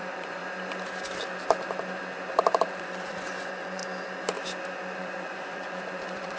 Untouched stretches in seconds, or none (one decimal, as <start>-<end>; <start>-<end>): 0.4-2.3; 3.8-5.0